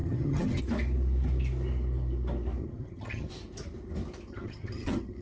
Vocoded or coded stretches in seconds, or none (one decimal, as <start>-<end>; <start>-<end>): 0.0-0.6; 2.6-3.3; 4.3-5.2